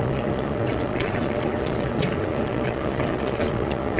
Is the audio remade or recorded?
remade